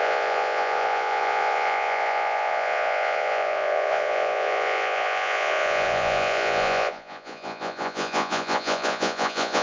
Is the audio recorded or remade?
remade